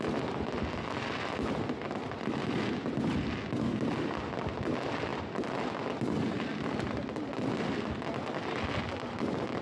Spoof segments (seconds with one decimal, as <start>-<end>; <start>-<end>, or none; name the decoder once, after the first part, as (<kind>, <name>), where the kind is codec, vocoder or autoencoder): none